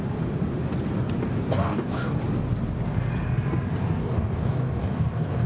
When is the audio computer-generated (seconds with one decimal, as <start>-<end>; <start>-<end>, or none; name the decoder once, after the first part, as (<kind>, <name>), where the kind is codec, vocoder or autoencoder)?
1.6-2.2 (codec, DAC); 4.0-5.5